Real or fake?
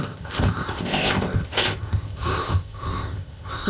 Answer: fake